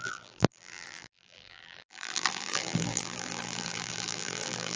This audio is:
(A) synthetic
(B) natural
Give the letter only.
A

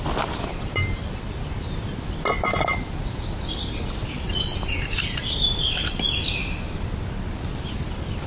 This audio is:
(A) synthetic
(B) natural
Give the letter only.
B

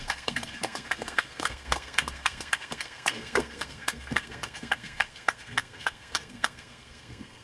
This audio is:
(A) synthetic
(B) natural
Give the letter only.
A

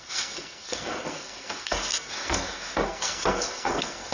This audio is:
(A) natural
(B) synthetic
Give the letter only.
B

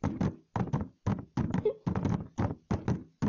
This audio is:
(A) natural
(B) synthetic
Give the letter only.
A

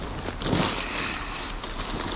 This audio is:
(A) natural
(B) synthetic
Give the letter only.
A